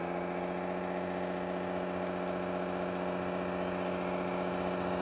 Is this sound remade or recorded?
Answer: recorded